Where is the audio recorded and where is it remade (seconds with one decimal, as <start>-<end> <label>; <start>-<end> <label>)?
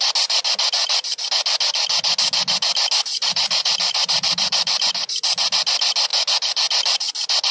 0.0-0.8 recorded; 0.8-1.3 remade; 1.3-3.1 recorded; 3.1-4.9 remade; 4.9-7.5 recorded